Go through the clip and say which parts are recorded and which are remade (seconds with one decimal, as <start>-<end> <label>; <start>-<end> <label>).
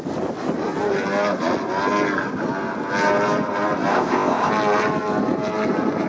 0.0-3.9 recorded; 3.9-4.5 remade; 4.5-6.1 recorded